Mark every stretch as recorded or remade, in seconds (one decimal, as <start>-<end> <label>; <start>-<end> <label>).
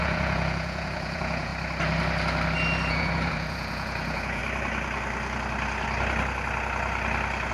0.0-1.5 remade; 1.5-2.9 recorded; 2.9-4.4 remade; 4.4-7.5 recorded